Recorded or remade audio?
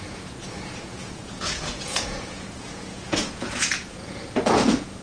remade